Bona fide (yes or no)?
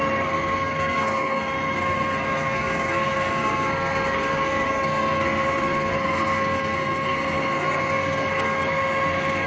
no